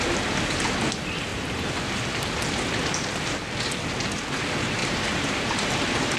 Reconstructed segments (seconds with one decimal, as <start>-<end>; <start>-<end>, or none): 4.8-5.7